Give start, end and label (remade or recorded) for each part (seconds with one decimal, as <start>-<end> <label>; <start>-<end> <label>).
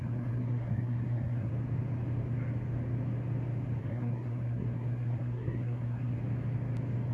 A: 0.0-1.5 remade; 1.5-3.8 recorded; 3.8-6.2 remade; 6.2-7.1 recorded